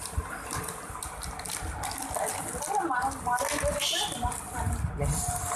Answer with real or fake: real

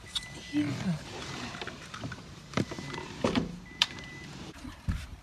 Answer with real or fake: fake